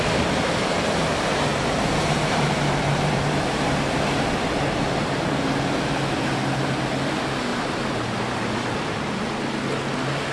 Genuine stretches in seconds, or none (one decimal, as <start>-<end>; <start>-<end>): 0.0-1.5; 5.6-7.5; 9.1-10.3